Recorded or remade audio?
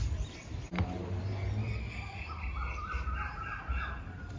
recorded